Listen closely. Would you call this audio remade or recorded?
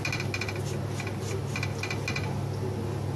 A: recorded